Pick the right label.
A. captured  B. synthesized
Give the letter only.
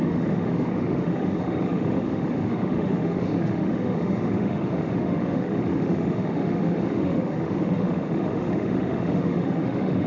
B